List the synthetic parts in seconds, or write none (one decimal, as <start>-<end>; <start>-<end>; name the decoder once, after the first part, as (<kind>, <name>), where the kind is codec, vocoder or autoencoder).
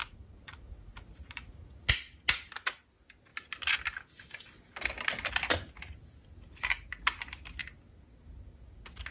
0.0-1.9 (vocoder, Vocos)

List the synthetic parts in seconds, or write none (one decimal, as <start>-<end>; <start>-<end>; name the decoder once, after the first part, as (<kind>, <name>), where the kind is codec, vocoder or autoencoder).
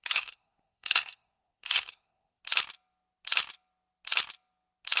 0.0-2.4 (codec, SNAC)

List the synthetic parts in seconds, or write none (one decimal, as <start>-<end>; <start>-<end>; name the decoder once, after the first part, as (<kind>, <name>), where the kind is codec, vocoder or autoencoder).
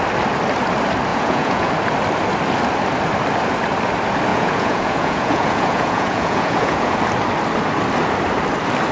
1.1-1.7 (vocoder, Vocos); 4.3-7.0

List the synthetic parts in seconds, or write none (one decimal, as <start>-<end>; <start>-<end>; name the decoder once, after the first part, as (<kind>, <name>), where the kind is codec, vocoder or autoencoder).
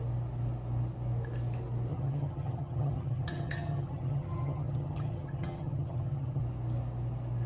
1.9-6.4 (vocoder, HiFi-GAN)